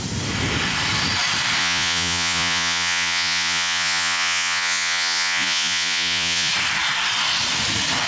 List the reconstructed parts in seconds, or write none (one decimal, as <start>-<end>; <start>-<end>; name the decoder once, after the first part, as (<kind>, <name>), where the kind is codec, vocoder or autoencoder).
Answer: 1.6-6.5 (vocoder, Vocos)